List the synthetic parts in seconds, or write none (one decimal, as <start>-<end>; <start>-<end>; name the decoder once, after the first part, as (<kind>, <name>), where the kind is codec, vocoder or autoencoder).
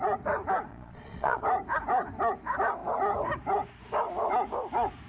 0.7-1.4 (vocoder, Vocos)